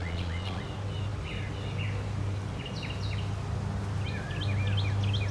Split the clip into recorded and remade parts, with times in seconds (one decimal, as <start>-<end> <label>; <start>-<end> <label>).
0.0-0.6 remade; 0.6-5.3 recorded